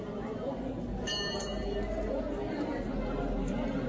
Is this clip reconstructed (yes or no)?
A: no